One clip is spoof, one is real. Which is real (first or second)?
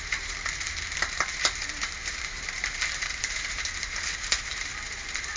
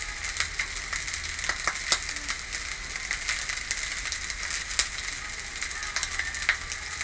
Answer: second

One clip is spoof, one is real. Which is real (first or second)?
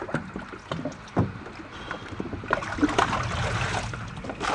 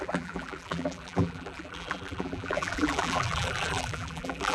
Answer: first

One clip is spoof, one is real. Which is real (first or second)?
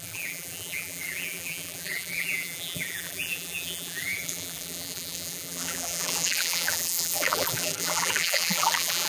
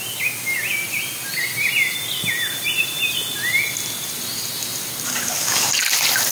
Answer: second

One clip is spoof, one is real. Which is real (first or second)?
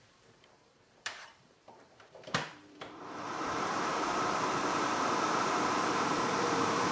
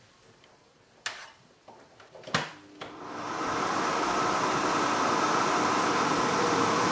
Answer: second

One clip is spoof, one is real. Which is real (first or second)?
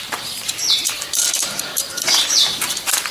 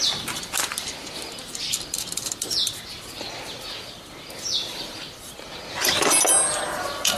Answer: second